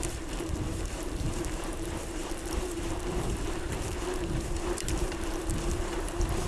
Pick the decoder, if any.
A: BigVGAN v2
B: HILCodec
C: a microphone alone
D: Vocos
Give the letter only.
A